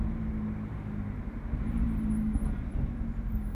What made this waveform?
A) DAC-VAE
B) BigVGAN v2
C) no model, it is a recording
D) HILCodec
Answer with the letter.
C